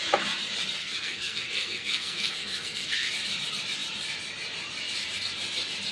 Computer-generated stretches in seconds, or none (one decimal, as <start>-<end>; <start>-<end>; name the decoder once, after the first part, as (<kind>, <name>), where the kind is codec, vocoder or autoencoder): 0.8-3.1 (codec, SNAC)